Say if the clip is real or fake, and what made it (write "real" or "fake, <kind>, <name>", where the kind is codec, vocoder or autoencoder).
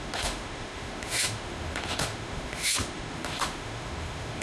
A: fake, autoencoder, DAC-VAE